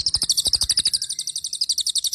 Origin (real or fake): real